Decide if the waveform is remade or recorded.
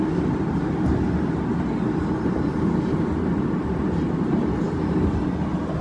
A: recorded